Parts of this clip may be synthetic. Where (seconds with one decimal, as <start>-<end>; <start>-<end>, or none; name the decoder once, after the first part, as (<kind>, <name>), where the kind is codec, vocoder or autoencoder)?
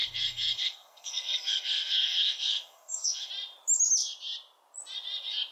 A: 0.0-3.3 (codec, SNAC)